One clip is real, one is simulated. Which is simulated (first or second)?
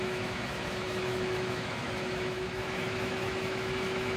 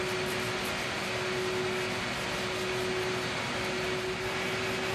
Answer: first